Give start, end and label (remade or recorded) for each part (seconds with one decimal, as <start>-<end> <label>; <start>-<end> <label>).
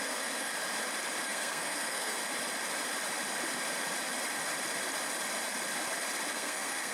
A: 0.0-0.5 remade; 0.5-1.2 recorded; 1.2-2.2 remade; 2.2-6.3 recorded; 6.3-6.9 remade